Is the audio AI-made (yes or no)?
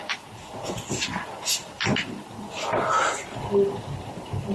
no